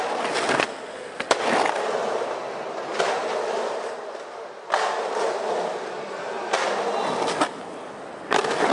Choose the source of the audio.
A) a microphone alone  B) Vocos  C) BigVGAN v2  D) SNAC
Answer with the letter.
A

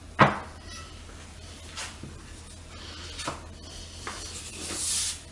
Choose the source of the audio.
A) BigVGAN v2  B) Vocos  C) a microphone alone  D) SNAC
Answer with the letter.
C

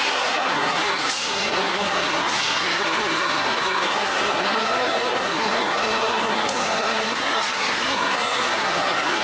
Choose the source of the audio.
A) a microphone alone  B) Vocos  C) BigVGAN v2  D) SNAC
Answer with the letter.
D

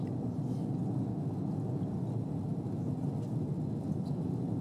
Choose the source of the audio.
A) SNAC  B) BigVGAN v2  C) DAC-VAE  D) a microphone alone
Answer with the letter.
D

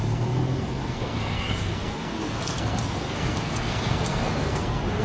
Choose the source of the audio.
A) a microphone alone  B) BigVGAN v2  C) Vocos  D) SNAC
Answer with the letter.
D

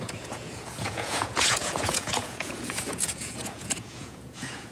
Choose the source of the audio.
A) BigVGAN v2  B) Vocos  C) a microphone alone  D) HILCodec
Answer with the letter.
B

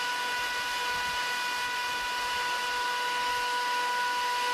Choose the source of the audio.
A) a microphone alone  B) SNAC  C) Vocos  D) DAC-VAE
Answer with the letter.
A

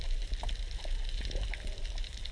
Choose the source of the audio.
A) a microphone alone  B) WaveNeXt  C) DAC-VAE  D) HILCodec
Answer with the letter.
A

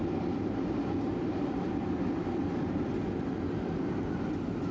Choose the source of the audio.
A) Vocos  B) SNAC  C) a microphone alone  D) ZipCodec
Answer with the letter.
C